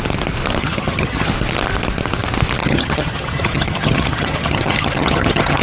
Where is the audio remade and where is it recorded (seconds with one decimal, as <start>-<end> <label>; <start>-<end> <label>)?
0.0-0.6 recorded; 0.6-1.3 remade; 1.3-2.6 recorded; 2.6-5.6 remade